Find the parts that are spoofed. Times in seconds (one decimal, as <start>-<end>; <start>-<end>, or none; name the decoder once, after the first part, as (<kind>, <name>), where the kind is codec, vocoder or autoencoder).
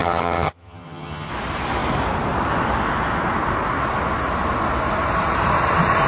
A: 0.0-1.3 (vocoder, HiFi-GAN)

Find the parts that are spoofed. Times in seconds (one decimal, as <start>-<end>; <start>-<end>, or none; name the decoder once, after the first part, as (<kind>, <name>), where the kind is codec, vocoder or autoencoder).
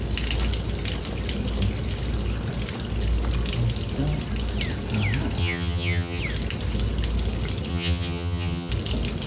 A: 5.4-6.2 (vocoder, HiFi-GAN); 7.7-8.7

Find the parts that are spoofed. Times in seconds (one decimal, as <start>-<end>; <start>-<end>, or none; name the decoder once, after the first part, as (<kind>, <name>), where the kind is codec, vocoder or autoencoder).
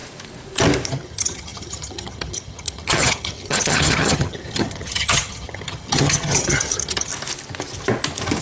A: 0.9-7.1 (vocoder, HiFi-GAN)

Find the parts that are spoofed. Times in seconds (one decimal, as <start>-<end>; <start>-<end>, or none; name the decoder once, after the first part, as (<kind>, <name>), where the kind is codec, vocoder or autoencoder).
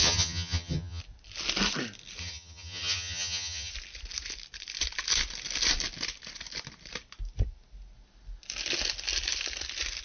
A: 0.0-1.0 (vocoder, HiFi-GAN); 2.2-3.7